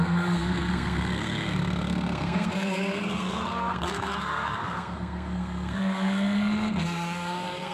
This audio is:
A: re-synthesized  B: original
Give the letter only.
A